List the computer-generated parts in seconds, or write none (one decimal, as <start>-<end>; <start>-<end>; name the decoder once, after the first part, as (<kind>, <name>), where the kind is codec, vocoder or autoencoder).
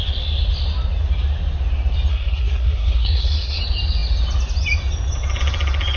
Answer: 2.1-3.6 (codec, SNAC)